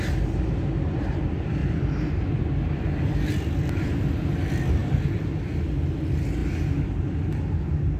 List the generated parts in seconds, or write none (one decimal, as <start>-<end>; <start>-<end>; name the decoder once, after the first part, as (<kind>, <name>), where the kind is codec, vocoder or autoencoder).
1.6-2.4 (vocoder, BigVGAN v2)